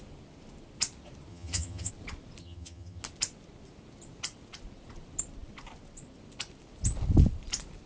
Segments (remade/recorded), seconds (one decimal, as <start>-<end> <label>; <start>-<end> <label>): 0.0-1.3 recorded; 1.3-1.9 remade; 1.9-2.4 recorded; 2.4-3.0 remade; 3.0-7.9 recorded